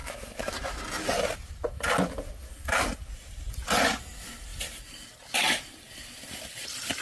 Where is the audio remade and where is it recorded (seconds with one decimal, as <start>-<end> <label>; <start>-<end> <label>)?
0.0-0.8 remade; 0.8-7.0 recorded